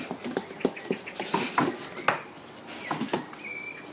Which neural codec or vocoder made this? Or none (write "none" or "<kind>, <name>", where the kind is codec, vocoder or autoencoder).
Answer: none